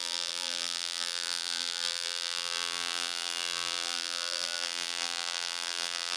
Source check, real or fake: fake